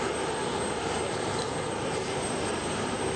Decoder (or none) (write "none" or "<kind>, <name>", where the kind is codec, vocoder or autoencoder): none